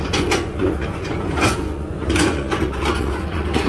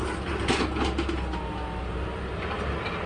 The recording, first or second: second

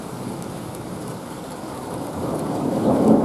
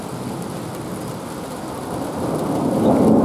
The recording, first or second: second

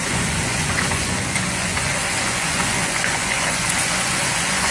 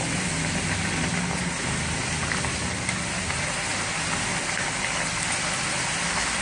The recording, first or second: second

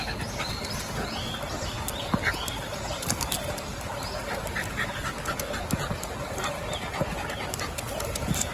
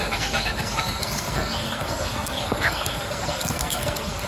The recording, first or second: first